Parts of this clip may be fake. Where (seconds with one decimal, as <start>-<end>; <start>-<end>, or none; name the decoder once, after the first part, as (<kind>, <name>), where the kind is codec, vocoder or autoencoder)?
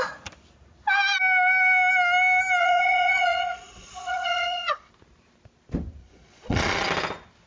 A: 2.6-4.9 (vocoder, Vocos); 6.0-6.9